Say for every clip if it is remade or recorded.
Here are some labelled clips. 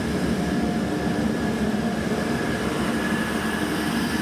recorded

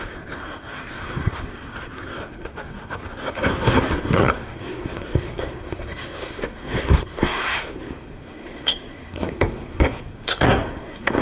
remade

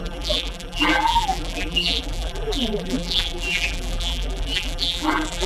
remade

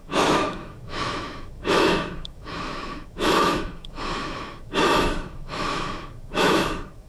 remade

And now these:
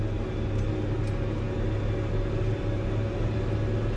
recorded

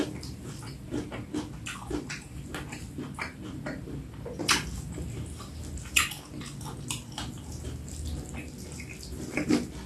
recorded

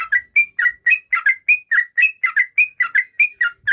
recorded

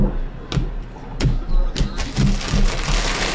recorded